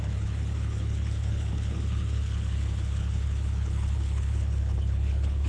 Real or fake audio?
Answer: fake